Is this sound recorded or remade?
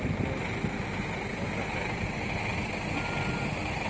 recorded